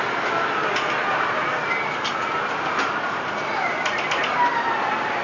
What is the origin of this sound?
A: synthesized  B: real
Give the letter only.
B